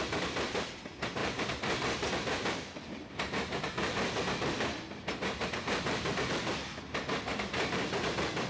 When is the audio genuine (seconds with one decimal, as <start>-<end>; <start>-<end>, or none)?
0.0-1.2; 6.3-7.3